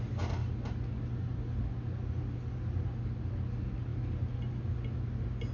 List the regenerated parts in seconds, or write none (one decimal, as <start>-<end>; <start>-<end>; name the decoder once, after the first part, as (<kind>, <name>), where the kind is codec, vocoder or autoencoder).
none

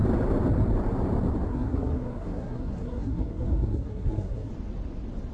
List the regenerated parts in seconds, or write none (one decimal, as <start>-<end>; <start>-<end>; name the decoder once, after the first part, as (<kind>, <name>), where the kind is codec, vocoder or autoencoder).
1.5-4.5 (codec, SNAC)

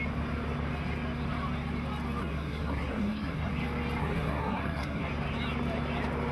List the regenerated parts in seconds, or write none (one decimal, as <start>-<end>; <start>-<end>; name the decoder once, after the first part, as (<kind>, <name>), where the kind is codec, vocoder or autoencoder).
2.2-3.5 (codec, SNAC); 4.0-5.1

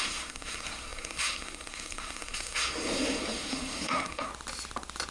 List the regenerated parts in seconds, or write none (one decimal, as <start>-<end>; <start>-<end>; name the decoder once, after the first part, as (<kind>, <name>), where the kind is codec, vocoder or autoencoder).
0.0-4.3 (codec, SNAC)

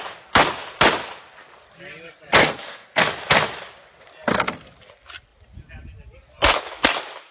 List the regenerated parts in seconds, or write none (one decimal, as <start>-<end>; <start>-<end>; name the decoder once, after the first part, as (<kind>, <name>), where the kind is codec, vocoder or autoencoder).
2.4-3.0 (codec, SNAC)

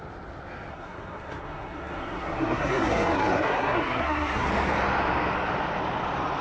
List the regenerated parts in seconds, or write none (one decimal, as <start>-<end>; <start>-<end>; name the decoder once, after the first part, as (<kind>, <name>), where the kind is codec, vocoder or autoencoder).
0.7-4.5 (codec, SNAC)

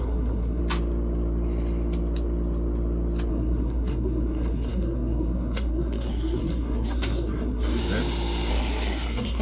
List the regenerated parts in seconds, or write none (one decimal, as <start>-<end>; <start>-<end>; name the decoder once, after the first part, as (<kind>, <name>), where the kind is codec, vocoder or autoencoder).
0.0-0.6 (codec, SNAC); 3.3-7.8; 8.5-9.4